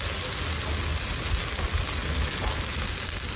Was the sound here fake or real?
real